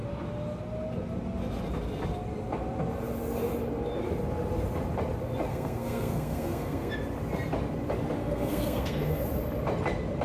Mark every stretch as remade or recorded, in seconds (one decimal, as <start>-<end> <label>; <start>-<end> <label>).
0.0-5.5 recorded; 5.5-6.9 remade; 6.9-8.2 recorded; 8.2-9.2 remade; 9.2-10.2 recorded